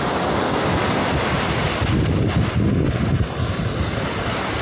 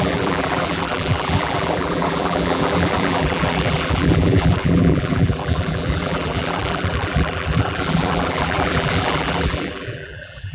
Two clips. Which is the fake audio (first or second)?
second